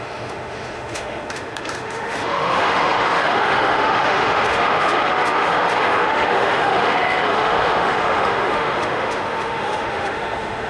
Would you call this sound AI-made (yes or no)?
yes